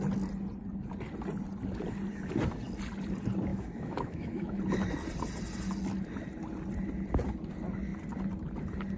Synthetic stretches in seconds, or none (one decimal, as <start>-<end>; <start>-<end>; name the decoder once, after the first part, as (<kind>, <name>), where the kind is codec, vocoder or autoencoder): 3.5-4.6 (autoencoder, DAC-VAE)